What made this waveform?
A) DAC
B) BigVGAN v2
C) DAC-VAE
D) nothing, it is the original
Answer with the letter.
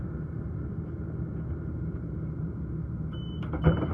D